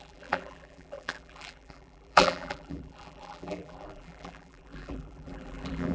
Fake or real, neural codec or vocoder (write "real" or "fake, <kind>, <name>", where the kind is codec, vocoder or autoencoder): fake, vocoder, BigVGAN v2